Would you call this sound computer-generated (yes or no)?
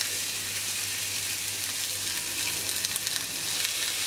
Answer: no